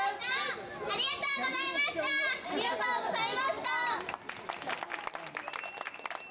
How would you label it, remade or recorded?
recorded